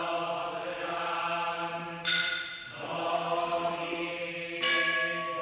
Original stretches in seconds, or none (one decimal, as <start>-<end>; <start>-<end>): 0.0-3.1; 4.1-5.4